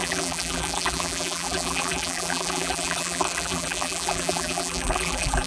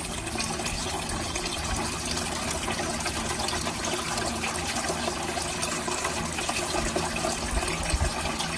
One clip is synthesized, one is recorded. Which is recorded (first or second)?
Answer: second